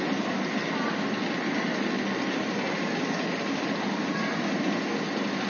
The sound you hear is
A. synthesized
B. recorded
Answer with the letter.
B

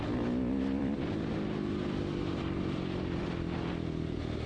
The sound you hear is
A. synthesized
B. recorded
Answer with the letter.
A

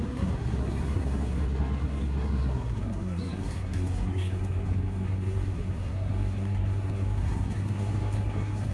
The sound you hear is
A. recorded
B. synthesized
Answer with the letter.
B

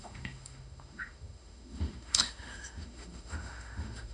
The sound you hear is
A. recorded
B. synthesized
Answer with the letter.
B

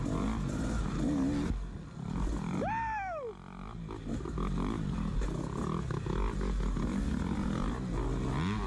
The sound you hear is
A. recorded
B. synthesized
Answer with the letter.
A